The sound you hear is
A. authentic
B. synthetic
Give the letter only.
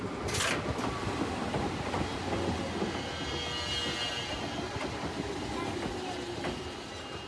A